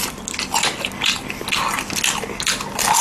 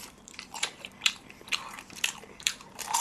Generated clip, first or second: second